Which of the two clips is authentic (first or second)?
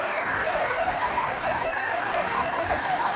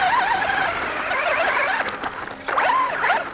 second